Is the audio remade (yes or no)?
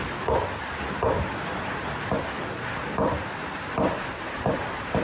no